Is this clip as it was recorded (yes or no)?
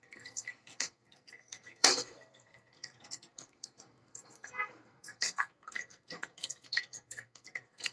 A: no